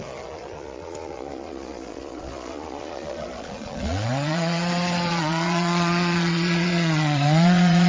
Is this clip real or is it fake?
fake